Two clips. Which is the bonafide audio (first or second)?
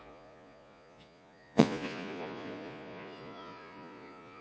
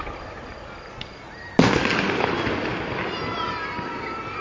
second